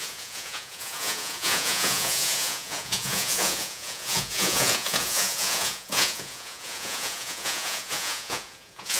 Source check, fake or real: fake